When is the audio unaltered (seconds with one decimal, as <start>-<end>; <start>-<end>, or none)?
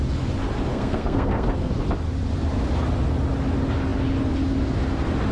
0.0-0.7; 1.7-5.3